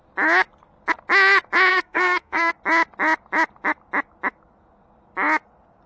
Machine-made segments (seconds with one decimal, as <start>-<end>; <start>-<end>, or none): 1.7-2.5